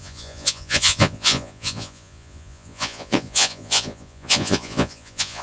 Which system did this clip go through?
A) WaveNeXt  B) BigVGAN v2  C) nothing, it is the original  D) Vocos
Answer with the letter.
D